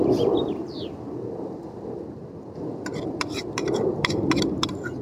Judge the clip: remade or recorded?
remade